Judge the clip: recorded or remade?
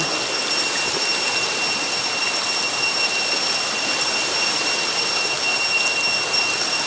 recorded